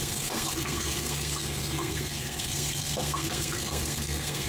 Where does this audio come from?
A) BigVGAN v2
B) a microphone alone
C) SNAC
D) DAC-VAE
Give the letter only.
C